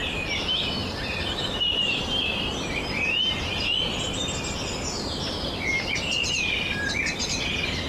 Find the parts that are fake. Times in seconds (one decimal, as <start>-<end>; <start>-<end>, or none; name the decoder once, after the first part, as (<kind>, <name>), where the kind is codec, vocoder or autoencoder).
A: 0.8-5.5 (vocoder, BigVGAN v2)